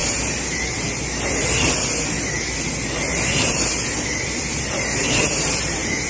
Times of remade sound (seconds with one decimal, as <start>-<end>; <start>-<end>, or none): 0.0-1.6; 3.1-6.1